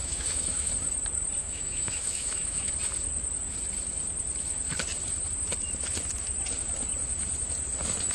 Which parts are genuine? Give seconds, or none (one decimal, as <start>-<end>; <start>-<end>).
0.7-1.4; 2.7-8.1